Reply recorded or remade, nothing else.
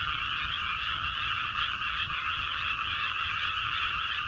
remade